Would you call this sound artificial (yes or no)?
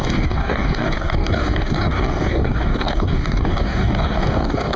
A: yes